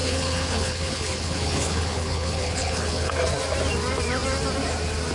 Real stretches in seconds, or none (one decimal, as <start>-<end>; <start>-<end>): 3.1-5.1